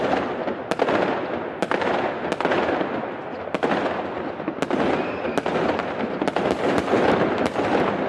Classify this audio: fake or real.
real